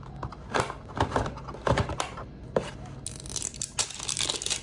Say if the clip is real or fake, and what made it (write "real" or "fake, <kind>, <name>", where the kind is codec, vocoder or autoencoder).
real